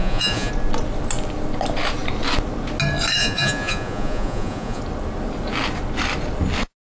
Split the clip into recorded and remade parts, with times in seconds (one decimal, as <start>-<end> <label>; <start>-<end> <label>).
0.0-0.5 remade; 0.5-3.2 recorded; 3.2-4.8 remade; 4.8-6.8 recorded